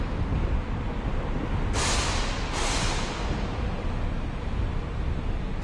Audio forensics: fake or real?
real